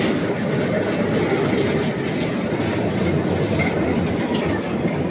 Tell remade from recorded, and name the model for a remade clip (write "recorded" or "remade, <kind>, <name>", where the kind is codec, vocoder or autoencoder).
recorded